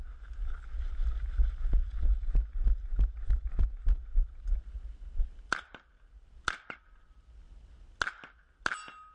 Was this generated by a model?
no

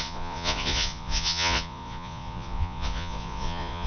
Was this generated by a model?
yes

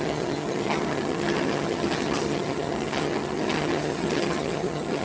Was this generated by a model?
yes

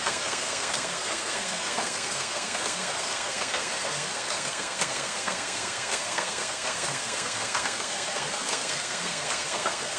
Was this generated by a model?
yes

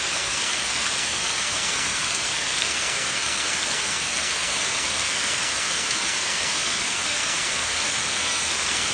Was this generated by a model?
yes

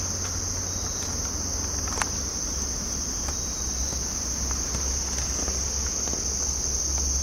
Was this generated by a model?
no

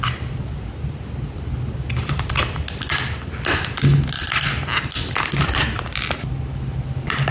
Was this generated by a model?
no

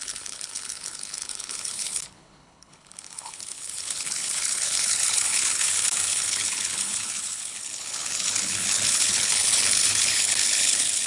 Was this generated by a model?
yes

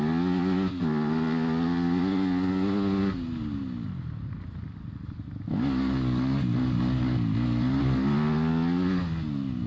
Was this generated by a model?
no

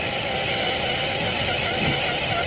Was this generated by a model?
no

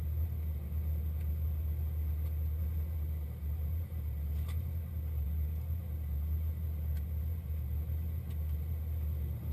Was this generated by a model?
no